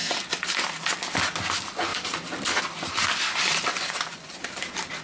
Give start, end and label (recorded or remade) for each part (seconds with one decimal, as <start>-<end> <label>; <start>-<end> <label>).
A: 0.0-3.7 recorded; 3.7-4.4 remade; 4.4-5.0 recorded